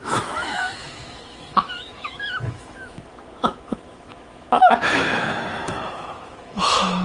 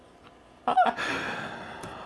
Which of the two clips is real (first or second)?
second